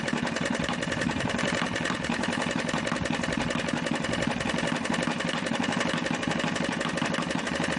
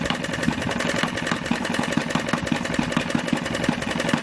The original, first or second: second